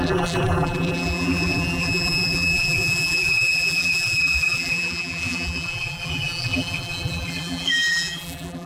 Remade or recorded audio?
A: remade